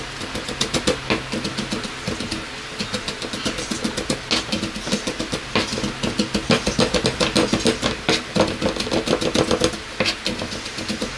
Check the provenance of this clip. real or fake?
real